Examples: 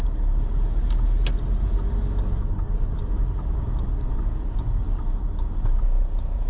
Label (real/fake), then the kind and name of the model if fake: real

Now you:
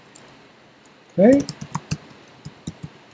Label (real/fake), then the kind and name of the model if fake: real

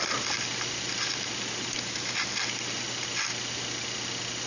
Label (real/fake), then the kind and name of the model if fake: real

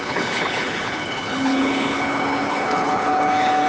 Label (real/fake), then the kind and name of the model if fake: fake, codec, HILCodec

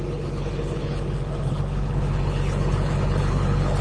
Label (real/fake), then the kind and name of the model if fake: fake, codec, HILCodec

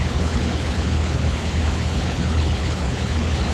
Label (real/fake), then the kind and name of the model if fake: fake, codec, HILCodec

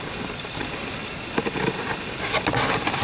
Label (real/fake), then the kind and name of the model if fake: real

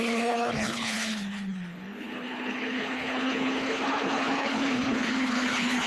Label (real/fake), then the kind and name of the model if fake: fake, codec, HILCodec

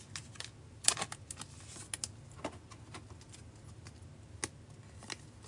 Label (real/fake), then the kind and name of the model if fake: real